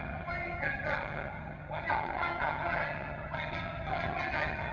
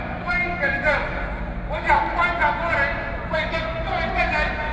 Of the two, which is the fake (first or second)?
first